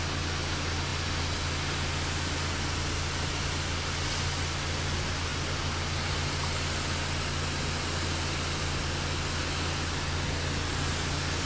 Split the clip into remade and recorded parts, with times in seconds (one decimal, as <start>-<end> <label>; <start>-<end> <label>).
0.0-11.5 recorded